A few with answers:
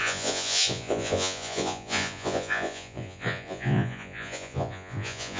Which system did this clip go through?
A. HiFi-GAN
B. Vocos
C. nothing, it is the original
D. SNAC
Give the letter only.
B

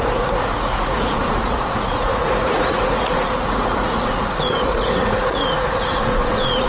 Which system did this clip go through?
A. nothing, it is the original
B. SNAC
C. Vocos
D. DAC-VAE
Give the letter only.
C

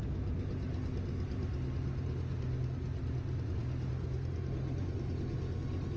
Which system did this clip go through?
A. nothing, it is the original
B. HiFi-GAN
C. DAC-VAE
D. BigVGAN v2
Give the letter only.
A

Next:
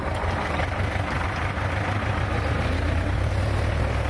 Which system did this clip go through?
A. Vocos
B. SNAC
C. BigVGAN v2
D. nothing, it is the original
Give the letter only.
D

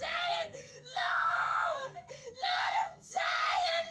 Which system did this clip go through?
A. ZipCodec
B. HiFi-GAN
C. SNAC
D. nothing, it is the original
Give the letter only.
C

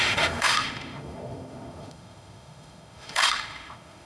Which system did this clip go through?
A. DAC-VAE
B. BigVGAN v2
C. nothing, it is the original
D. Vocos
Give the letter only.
A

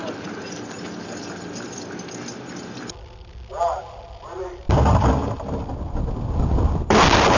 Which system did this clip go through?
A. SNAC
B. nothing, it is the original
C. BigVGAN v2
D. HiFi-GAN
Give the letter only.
B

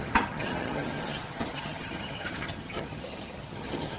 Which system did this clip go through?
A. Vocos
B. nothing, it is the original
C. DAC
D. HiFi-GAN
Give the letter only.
D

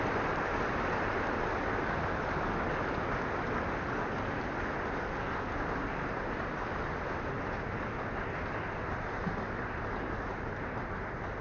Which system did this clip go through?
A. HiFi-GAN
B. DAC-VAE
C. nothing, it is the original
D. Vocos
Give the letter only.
C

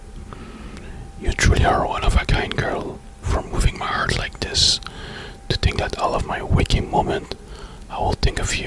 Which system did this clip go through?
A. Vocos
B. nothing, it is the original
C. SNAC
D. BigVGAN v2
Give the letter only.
B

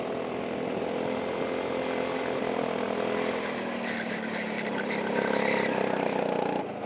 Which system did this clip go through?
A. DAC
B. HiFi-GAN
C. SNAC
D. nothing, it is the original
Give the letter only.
D